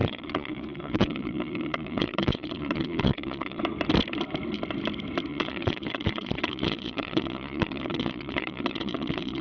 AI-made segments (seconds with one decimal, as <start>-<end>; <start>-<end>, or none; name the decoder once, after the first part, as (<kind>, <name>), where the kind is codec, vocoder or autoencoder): 0.0-3.6 (vocoder, Vocos); 5.3-9.4